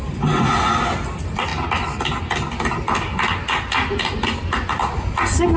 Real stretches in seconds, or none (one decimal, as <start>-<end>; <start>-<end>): 0.0-5.6